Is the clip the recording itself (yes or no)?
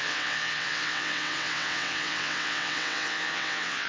no